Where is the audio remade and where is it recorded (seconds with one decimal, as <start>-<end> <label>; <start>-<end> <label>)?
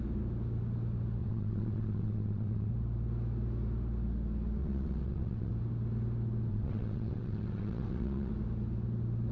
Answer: 0.0-1.2 recorded; 1.2-2.7 remade; 2.7-4.6 recorded; 4.6-5.5 remade; 5.5-6.5 recorded; 6.5-8.3 remade; 8.3-9.3 recorded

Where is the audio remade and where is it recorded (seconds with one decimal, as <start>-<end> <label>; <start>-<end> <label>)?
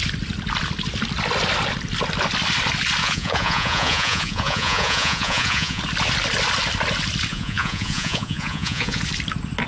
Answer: 0.0-3.0 recorded; 3.0-5.8 remade; 5.8-7.3 recorded; 7.3-9.0 remade; 9.0-9.7 recorded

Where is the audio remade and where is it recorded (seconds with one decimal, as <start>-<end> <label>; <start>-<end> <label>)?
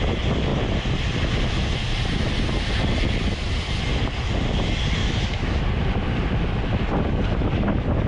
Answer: 0.0-5.0 recorded; 5.0-5.6 remade; 5.6-8.1 recorded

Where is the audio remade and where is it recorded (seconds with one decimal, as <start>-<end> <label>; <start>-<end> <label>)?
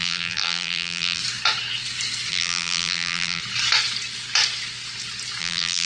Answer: 0.0-1.2 remade; 1.2-2.3 recorded; 2.3-3.4 remade; 3.4-5.4 recorded; 5.4-5.9 remade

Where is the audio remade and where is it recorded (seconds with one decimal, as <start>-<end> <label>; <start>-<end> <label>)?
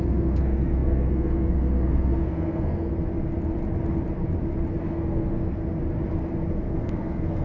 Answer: 0.0-2.9 remade; 2.9-4.8 recorded; 4.8-5.6 remade; 5.6-6.6 recorded; 6.6-7.4 remade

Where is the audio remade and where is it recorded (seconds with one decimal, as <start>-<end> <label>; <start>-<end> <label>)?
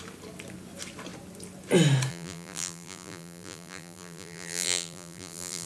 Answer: 0.0-2.1 recorded; 2.1-5.7 remade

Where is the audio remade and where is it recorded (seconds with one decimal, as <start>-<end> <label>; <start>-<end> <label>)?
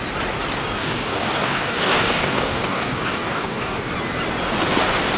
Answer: 0.0-0.8 recorded; 0.8-3.9 remade; 3.9-5.2 recorded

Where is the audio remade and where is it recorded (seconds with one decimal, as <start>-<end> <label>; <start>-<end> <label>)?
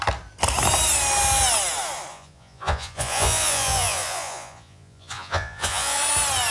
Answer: 0.0-2.1 recorded; 2.1-6.0 remade; 6.0-6.5 recorded